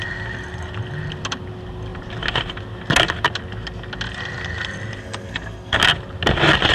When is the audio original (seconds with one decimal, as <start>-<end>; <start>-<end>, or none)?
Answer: 0.0-5.0; 5.8-6.7